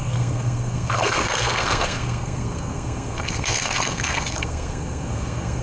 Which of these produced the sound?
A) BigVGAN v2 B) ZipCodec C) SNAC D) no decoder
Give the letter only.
C